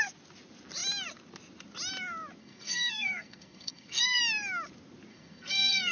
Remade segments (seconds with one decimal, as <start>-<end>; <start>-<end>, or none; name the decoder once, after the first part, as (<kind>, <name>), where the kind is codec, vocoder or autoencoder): 2.4-4.2 (codec, SNAC); 5.1-5.9